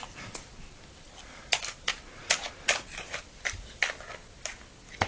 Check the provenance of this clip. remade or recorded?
recorded